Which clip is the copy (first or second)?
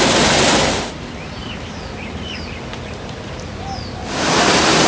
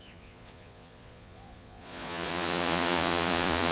second